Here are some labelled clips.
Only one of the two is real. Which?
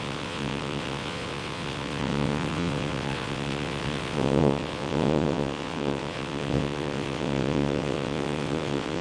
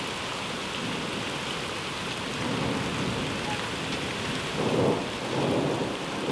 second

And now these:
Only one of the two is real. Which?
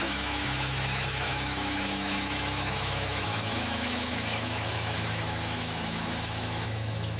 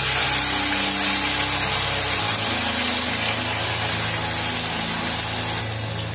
second